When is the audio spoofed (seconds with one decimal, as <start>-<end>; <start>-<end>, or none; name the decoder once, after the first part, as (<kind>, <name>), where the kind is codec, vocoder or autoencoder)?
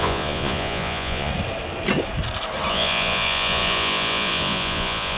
0.0-1.3 (vocoder, Vocos); 2.7-5.2